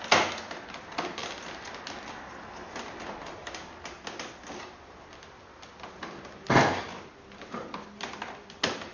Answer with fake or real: real